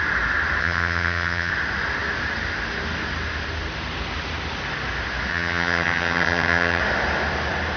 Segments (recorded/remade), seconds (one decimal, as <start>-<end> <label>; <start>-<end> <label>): 0.0-0.6 recorded; 0.6-1.5 remade; 1.5-5.3 recorded; 5.3-6.8 remade; 6.8-7.8 recorded